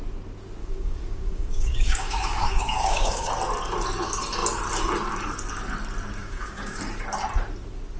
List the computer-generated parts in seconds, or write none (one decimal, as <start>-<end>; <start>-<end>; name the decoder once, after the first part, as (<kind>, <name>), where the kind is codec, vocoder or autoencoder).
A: 0.6-3.3 (codec, DAC); 6.2-6.8